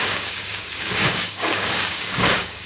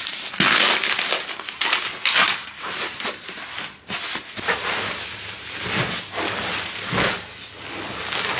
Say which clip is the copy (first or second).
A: first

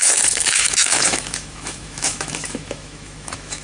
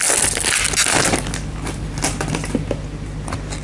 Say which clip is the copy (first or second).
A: first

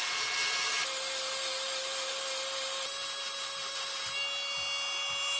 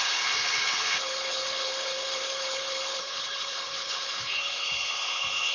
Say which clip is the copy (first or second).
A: second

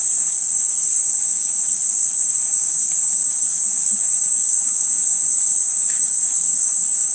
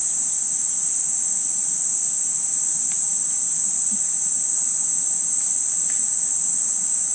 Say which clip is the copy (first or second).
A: first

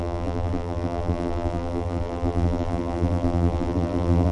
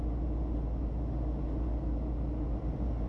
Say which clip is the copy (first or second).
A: first